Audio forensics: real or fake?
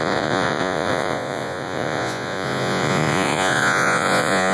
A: fake